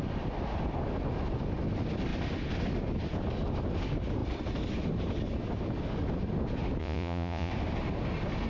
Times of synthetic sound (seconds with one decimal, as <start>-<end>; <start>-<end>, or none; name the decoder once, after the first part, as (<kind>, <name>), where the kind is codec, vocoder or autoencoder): 6.8-7.5 (vocoder, Vocos)